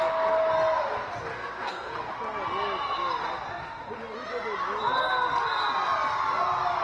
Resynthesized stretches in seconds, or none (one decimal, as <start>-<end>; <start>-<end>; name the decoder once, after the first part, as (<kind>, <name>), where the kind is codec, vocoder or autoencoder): 1.3-2.1 (codec, SNAC)

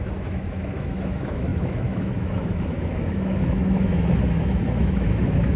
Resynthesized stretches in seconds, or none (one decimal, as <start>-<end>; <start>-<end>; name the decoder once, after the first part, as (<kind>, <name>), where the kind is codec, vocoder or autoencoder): 0.0-5.6 (autoencoder, DAC-VAE)

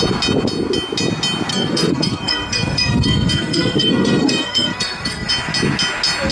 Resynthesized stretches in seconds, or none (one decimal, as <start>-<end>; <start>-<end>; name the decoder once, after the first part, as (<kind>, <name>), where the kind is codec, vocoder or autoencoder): 1.5-5.3 (codec, SNAC)

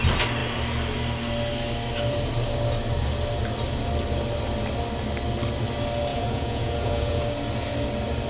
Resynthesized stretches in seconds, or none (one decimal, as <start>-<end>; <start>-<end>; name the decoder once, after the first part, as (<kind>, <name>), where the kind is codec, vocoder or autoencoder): 6.1-7.2 (vocoder, Vocos)

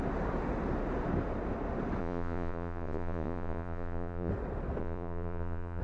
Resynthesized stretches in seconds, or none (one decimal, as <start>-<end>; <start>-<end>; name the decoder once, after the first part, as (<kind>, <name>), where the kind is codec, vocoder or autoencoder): 2.0-4.3 (vocoder, Vocos); 4.8-5.8

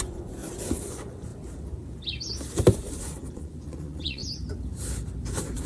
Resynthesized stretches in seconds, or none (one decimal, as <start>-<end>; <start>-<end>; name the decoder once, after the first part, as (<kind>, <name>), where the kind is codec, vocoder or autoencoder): 0.0-0.4 (vocoder, Vocos); 0.9-1.3; 3.3-4.2

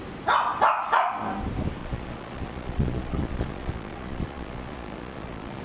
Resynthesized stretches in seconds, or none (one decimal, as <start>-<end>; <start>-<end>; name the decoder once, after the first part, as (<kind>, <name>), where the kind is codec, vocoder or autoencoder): 1.8-5.6 (vocoder, Vocos)